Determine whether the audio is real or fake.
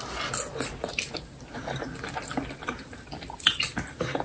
real